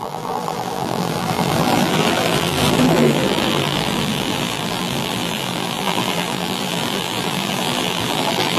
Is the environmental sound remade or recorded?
remade